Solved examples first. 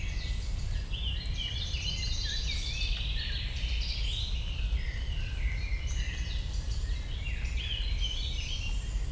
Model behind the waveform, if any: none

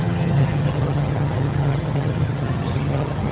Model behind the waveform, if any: vocoder, HiFi-GAN